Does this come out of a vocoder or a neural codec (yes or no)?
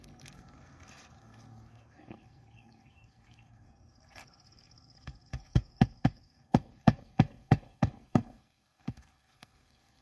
yes